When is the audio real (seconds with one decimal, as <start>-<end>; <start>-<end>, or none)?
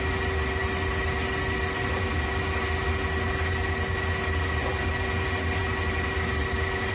0.0-6.9